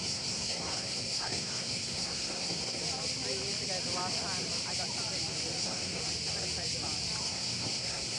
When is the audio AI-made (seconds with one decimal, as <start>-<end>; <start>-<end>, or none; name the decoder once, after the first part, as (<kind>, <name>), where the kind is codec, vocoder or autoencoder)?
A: 0.0-2.8 (codec, SNAC); 5.6-6.0; 7.2-8.2